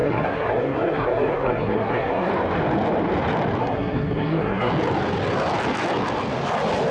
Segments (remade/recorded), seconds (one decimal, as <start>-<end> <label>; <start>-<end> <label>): 0.0-2.3 remade; 2.3-3.6 recorded; 3.6-4.7 remade; 4.7-6.9 recorded

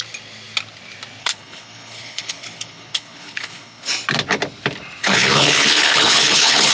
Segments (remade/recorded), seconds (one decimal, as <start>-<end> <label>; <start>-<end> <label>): 0.0-1.2 recorded; 1.2-3.9 remade; 3.9-5.0 recorded; 5.0-6.7 remade

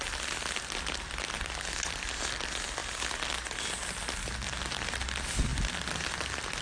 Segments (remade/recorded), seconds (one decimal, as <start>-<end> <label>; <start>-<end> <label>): 0.0-6.6 recorded

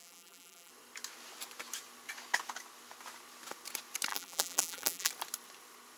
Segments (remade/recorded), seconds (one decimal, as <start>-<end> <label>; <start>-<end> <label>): 0.0-0.7 remade; 0.7-4.1 recorded; 4.1-5.1 remade; 5.1-6.0 recorded

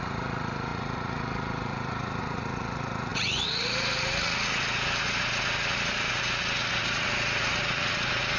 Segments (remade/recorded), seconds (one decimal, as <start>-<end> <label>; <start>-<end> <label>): 0.0-8.4 remade